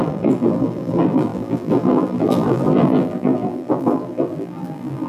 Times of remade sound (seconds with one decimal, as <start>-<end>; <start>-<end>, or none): 0.0-5.1